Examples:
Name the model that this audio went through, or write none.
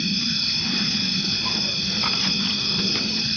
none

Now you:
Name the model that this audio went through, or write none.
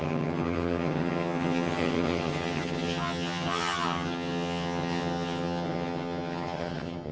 vocoder, HiFi-GAN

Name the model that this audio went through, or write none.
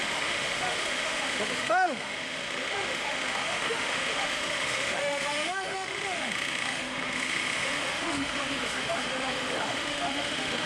autoencoder, DAC-VAE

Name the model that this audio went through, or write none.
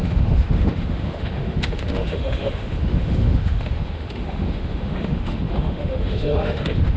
autoencoder, DAC-VAE